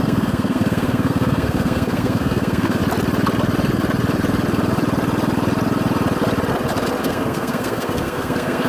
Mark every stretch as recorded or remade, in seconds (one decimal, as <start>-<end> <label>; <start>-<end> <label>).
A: 0.0-2.8 remade; 2.8-7.0 recorded; 7.0-8.7 remade